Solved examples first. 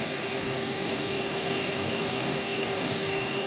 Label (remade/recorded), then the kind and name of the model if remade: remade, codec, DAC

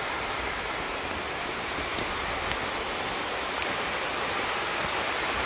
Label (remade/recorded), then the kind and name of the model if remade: recorded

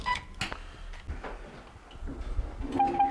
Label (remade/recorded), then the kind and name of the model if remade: recorded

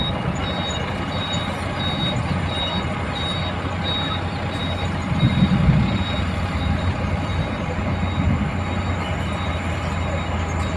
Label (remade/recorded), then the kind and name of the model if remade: recorded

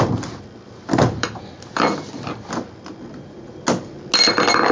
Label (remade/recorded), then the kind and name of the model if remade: recorded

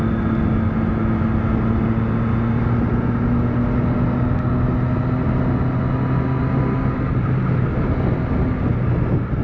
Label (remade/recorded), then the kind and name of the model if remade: recorded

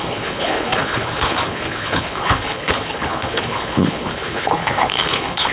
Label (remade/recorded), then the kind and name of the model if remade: remade, codec, HILCodec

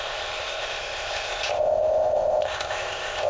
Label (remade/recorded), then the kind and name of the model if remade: remade, codec, ZipCodec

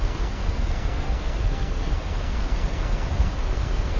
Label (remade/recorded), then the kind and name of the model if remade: remade, codec, SNAC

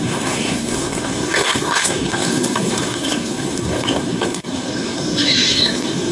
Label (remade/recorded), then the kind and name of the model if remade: remade, codec, SNAC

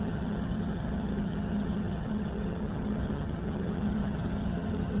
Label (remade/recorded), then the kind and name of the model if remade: remade, vocoder, HiFi-GAN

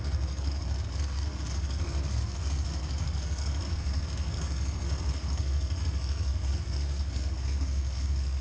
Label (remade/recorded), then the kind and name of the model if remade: remade, codec, SNAC